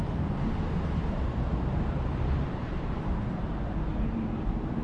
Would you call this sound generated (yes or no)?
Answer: yes